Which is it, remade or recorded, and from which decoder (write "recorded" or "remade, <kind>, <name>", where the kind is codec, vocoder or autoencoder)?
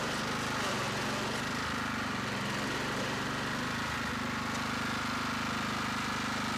recorded